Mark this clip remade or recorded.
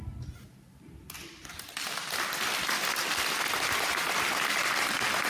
recorded